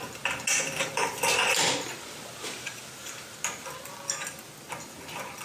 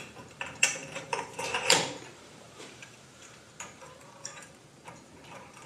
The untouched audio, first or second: first